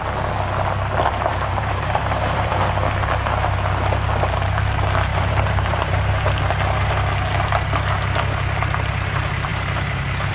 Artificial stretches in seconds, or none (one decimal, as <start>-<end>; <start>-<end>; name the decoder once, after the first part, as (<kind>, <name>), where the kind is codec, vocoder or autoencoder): 1.3-2.6 (vocoder, BigVGAN v2); 5.1-6.1; 9.5-10.3